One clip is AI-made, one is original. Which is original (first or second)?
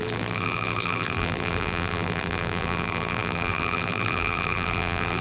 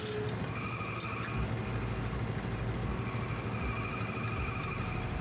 second